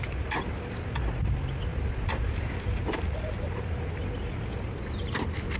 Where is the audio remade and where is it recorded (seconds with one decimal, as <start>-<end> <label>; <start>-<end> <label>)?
0.0-1.7 recorded; 1.7-3.9 remade; 3.9-5.6 recorded